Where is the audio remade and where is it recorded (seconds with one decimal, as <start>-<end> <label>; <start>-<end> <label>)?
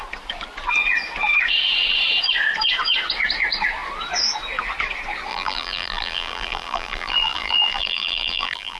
0.0-5.3 recorded; 5.3-8.8 remade